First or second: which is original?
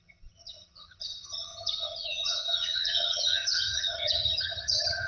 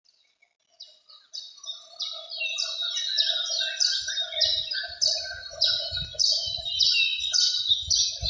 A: second